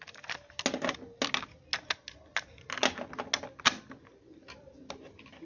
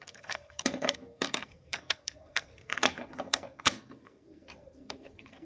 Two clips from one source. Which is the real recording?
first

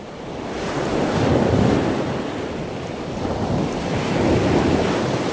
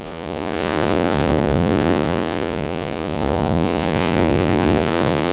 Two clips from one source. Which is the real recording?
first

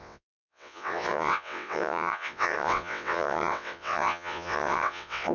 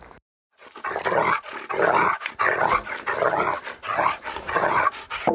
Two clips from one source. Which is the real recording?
second